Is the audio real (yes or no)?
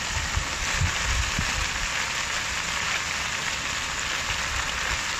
yes